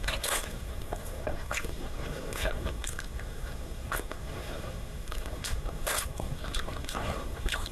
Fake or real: fake